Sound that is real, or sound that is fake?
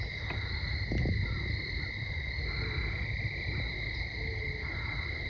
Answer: real